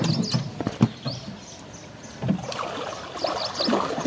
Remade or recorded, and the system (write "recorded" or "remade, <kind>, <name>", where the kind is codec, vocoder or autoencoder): recorded